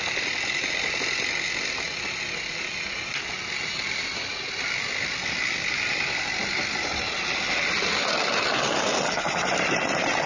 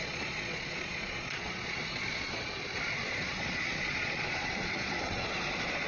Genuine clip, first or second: first